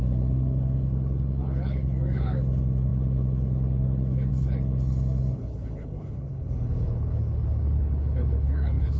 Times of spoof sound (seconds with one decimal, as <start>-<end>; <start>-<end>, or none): 0.0-9.0